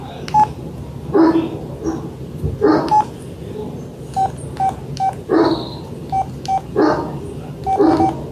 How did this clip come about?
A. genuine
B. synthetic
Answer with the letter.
A